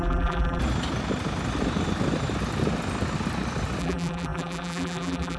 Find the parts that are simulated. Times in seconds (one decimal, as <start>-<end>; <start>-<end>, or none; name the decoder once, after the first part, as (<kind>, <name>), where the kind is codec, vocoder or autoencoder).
0.0-0.6 (vocoder, BigVGAN v2); 3.8-5.4